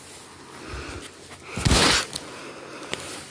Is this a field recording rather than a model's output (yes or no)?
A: yes